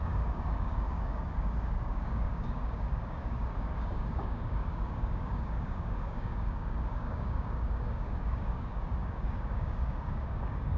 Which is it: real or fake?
fake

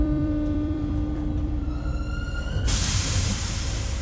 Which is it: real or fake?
fake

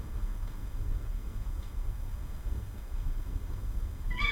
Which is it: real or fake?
fake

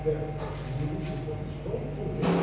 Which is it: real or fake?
real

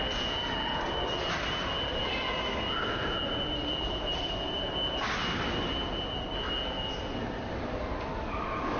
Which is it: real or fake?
real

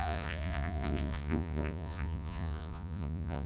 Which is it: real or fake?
fake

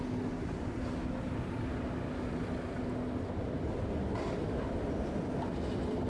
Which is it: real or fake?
real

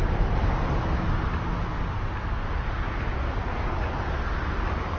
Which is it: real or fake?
real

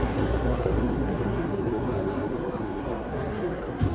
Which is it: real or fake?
fake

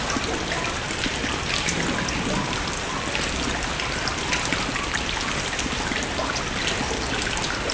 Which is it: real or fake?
real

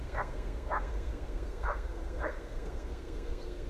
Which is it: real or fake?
fake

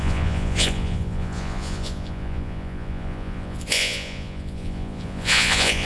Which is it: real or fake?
fake